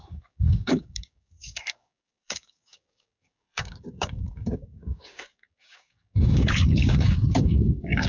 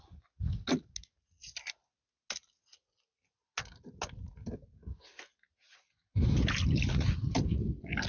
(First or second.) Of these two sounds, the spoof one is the first